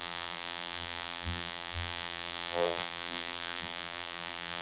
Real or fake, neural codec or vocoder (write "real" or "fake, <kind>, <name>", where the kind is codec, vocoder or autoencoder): fake, vocoder, BigVGAN v2